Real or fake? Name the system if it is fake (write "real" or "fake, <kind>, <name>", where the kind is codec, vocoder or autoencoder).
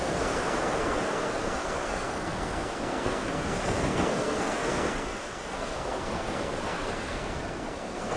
fake, codec, SNAC